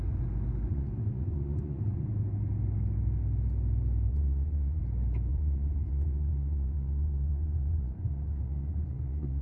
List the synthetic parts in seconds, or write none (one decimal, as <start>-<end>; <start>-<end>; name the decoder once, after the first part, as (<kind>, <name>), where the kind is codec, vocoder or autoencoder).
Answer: 0.7-2.1 (vocoder, Vocos); 4.1-4.8; 5.3-9.4